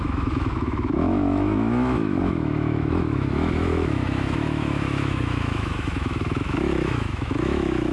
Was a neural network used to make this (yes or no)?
yes